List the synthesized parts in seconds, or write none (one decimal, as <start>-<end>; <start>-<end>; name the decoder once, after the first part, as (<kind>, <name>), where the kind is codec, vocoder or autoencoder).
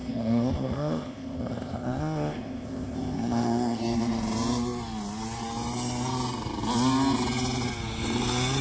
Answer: 0.0-3.8 (codec, ZipCodec)